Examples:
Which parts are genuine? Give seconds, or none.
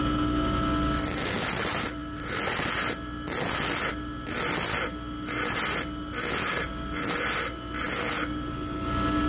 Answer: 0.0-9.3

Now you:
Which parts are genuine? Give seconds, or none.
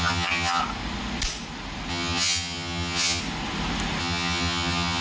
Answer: 0.6-1.9; 3.2-4.0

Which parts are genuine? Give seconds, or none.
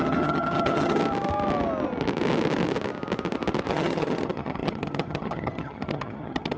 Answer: 1.0-3.7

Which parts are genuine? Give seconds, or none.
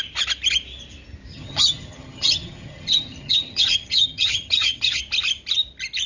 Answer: 0.0-1.3; 5.0-6.1